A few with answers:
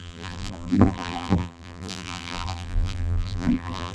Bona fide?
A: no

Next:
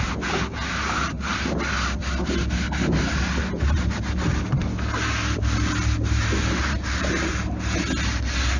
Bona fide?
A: yes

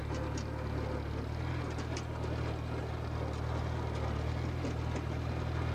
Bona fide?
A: yes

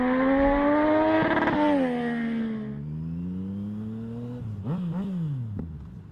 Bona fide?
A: yes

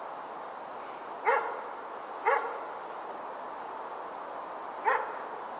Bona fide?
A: yes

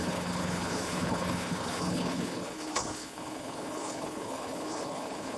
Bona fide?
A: no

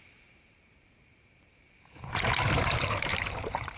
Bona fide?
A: no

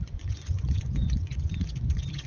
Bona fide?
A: no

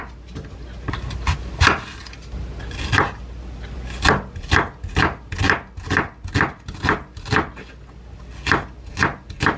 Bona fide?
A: yes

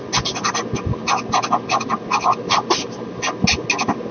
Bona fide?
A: yes